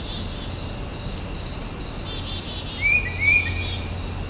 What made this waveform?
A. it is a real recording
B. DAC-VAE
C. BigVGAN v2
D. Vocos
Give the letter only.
A